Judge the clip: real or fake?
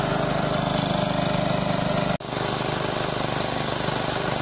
real